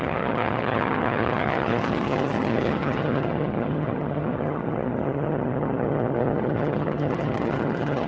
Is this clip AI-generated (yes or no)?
yes